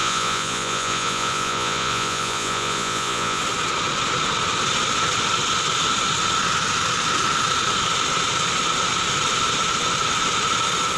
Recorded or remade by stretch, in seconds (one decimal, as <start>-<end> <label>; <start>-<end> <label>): 0.0-3.4 remade; 3.4-11.0 recorded